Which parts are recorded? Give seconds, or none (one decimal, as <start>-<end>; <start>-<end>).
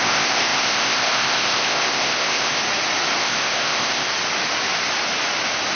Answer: 2.6-3.2; 4.1-5.8